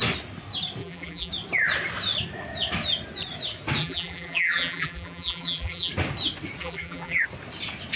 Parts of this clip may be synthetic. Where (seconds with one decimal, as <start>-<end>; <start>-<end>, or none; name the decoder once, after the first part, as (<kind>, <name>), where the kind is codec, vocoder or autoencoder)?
0.8-1.3 (vocoder, BigVGAN v2); 3.8-5.9; 6.6-7.2